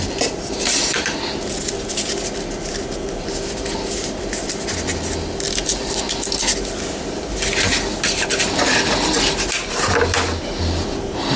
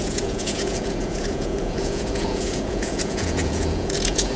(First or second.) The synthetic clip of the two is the second